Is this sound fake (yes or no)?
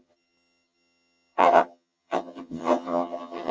yes